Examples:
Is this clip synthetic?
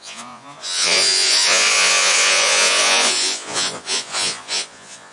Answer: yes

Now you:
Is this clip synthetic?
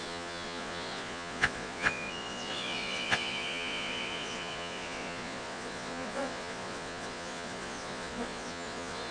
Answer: yes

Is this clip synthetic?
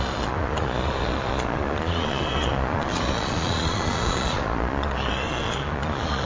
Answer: yes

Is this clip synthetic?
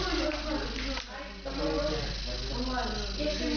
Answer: no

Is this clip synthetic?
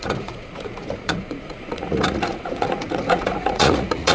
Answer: yes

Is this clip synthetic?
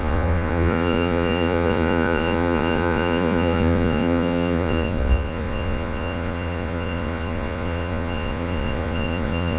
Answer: yes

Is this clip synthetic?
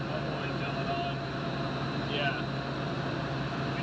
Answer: no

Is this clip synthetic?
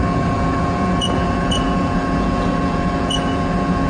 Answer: yes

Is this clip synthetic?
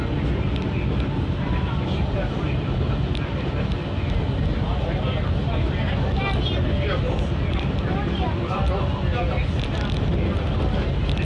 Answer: no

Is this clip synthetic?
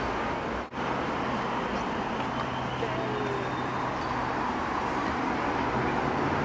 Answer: no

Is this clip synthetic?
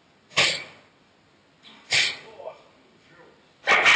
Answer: no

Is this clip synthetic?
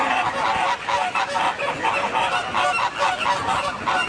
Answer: no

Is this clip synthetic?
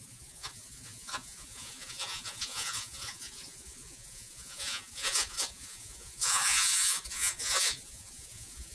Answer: yes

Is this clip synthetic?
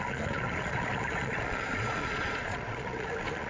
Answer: yes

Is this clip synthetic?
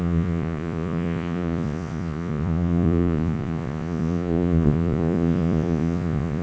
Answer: yes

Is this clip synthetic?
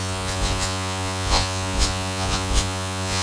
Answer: yes